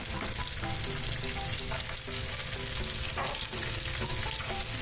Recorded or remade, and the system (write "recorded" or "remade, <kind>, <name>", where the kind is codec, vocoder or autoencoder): recorded